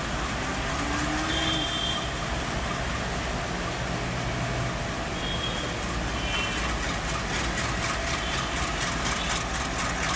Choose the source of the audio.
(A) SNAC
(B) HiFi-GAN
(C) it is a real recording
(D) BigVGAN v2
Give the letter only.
C